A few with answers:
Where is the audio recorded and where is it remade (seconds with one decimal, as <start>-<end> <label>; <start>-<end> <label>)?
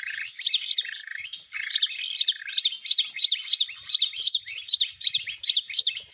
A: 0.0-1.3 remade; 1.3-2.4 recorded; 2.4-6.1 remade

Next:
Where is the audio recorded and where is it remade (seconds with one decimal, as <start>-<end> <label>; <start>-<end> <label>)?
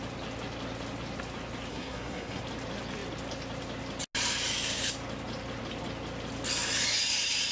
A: 0.0-1.7 recorded; 1.7-2.4 remade; 2.4-7.5 recorded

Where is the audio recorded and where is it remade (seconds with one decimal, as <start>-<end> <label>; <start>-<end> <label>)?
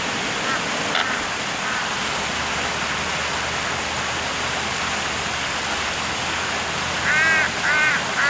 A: 0.0-8.3 recorded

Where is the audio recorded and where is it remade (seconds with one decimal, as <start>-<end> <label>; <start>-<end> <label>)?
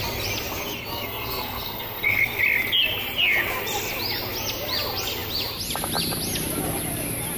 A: 0.0-0.9 recorded; 0.9-2.4 remade; 2.4-7.4 recorded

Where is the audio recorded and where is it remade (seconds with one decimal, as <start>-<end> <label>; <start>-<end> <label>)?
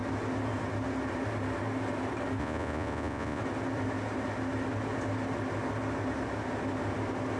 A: 0.0-2.4 recorded; 2.4-3.4 remade; 3.4-7.4 recorded